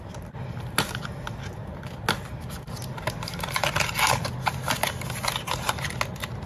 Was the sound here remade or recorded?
recorded